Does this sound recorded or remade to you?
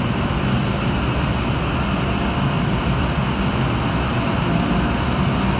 recorded